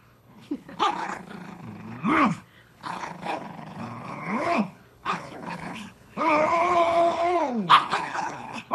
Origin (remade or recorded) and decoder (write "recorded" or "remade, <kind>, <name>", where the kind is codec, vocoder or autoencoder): remade, codec, HILCodec